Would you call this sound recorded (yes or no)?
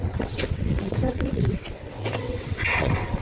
no